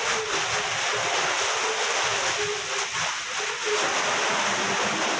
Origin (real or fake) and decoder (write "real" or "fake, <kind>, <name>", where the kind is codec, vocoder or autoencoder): real